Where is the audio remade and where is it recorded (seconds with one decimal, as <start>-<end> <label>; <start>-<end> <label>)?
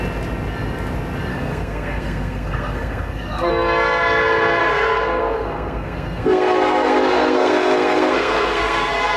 0.0-1.3 recorded; 1.3-3.5 remade; 3.5-4.6 recorded; 4.6-9.2 remade